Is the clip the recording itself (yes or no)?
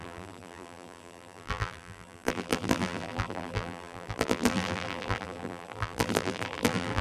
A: no